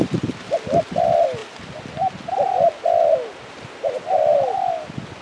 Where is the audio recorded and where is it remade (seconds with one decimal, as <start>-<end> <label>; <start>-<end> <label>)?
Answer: 0.0-5.2 recorded